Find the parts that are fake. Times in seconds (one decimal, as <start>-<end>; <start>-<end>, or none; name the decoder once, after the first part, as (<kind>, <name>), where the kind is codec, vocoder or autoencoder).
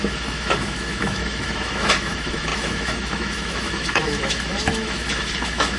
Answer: 0.0-5.8 (autoencoder, DAC-VAE)